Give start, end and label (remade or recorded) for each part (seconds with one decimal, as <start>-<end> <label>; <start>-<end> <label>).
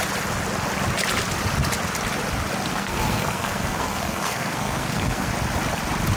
0.0-2.7 recorded; 2.7-5.3 remade; 5.3-6.2 recorded